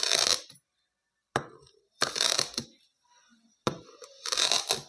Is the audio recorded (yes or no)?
yes